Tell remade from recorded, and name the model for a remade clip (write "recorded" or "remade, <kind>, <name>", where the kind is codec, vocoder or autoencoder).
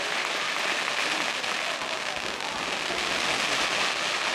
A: recorded